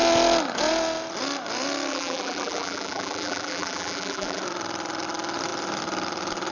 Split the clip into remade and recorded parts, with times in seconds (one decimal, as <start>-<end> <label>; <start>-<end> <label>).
0.0-1.9 recorded; 1.9-4.4 remade; 4.4-6.5 recorded